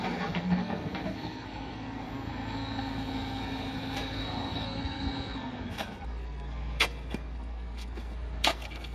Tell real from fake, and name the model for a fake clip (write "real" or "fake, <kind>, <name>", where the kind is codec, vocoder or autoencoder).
fake, codec, SNAC